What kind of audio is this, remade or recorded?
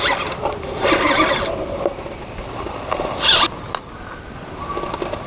recorded